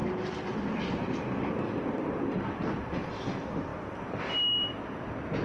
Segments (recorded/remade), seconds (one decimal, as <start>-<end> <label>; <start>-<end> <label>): 0.0-5.4 recorded